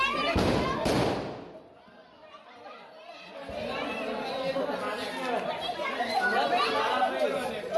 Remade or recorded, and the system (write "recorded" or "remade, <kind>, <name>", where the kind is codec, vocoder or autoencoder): recorded